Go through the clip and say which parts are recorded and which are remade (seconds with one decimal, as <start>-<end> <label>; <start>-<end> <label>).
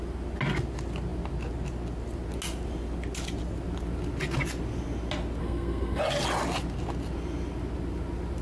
0.0-5.4 recorded; 5.4-6.0 remade; 6.0-8.4 recorded